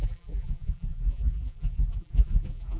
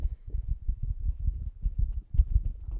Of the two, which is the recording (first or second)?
second